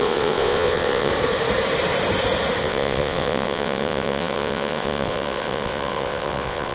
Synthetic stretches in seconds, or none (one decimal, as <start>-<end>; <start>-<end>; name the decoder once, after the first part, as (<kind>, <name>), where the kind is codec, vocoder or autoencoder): 0.0-1.1 (vocoder, WaveNeXt); 2.6-6.7